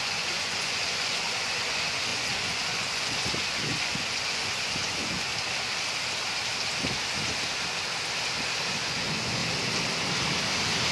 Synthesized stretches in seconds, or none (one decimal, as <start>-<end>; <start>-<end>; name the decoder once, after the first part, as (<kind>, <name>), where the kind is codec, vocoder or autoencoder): 0.0-5.3 (vocoder, Vocos); 8.7-9.4